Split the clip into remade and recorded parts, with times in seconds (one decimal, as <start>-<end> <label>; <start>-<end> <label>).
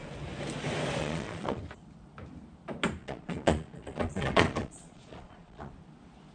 0.0-1.0 recorded; 1.0-1.6 remade; 1.6-3.0 recorded; 3.0-5.7 remade; 5.7-6.3 recorded